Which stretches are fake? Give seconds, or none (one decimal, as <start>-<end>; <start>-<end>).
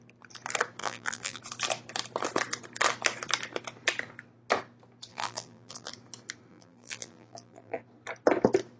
0.8-1.4; 5.1-5.9; 6.5-7.8